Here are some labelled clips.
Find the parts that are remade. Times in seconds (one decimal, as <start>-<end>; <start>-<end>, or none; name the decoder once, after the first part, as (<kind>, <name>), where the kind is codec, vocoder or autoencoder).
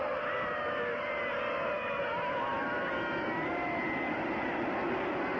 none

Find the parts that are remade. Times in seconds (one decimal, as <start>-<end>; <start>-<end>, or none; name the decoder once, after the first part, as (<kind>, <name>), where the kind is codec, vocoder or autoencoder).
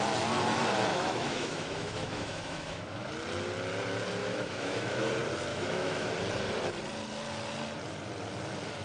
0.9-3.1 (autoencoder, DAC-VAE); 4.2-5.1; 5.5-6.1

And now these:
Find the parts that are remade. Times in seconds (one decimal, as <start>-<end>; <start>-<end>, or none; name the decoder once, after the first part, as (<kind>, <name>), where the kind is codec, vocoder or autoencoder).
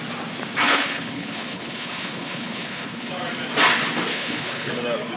0.6-3.1 (codec, HILCodec); 4.1-4.7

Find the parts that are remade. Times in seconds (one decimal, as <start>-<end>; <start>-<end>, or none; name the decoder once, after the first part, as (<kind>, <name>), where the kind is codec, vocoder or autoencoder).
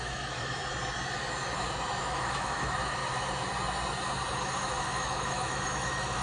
0.0-0.6 (autoencoder, DAC-VAE); 2.0-3.0; 4.4-6.2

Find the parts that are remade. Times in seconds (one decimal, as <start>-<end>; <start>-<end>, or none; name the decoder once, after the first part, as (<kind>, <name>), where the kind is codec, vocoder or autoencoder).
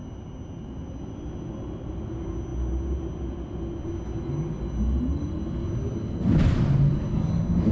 none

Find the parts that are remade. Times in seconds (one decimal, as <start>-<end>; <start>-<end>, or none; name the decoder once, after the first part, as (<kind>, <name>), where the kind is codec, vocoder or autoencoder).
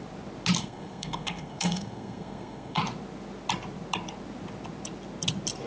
0.6-2.8 (codec, SNAC)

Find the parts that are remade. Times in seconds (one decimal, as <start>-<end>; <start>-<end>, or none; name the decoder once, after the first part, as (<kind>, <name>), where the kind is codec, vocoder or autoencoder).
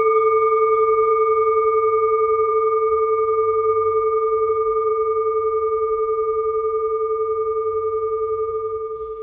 0.0-1.1 (codec, DAC); 2.5-4.9; 8.5-9.2